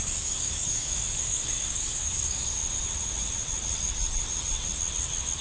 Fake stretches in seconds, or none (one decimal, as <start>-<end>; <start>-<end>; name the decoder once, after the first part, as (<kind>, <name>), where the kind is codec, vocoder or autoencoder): 0.0-2.6 (codec, DAC)